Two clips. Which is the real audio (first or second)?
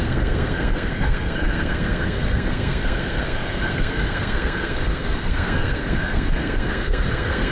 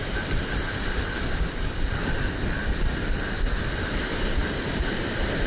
second